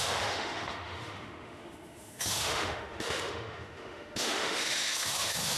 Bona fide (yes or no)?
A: no